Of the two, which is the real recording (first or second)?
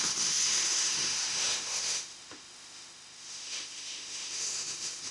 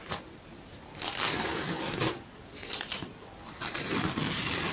second